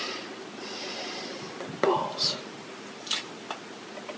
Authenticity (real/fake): real